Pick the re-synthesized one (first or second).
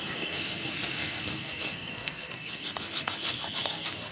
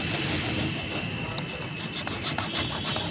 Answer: first